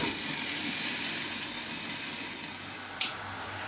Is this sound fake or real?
real